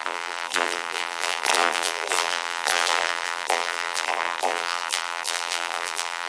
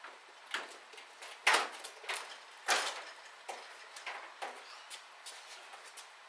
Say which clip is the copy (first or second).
first